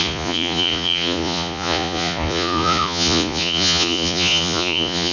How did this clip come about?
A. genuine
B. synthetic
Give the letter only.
B